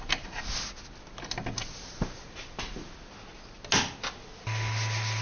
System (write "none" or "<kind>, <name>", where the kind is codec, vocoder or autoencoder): none